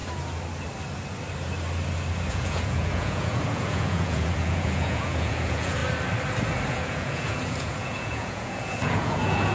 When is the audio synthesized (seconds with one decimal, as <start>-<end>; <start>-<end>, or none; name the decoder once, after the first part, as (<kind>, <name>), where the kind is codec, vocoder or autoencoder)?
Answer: 2.3-5.8 (vocoder, Vocos); 6.7-9.5

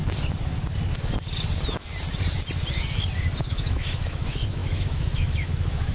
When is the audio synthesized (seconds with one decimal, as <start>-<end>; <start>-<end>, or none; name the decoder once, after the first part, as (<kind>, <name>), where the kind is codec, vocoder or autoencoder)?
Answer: 3.5-5.9 (autoencoder, DAC-VAE)

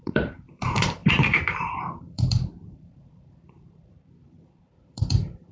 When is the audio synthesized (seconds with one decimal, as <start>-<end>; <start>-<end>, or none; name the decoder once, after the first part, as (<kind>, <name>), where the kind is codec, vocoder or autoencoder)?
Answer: 0.0-5.5 (vocoder, BigVGAN v2)

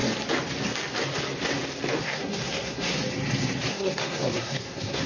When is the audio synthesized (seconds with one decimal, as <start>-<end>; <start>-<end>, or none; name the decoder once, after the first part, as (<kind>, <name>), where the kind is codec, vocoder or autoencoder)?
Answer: 2.0-3.0 (codec, SNAC); 3.7-5.1